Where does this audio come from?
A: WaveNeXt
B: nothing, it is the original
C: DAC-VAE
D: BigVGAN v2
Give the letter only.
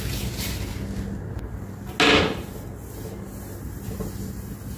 B